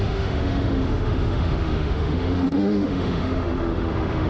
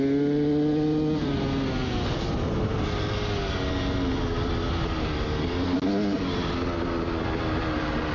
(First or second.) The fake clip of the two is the first